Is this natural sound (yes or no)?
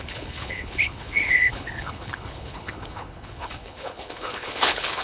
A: no